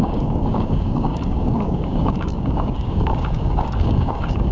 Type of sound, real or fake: fake